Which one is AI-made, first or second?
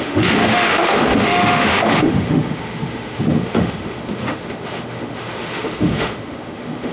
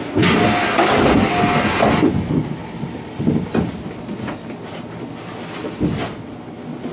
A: first